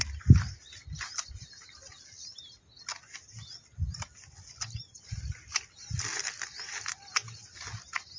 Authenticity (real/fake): real